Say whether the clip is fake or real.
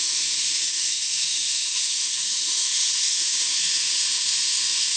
fake